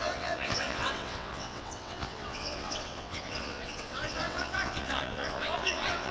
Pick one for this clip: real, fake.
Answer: fake